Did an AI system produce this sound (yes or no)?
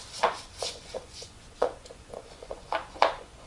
yes